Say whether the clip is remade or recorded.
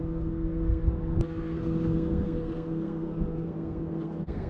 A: remade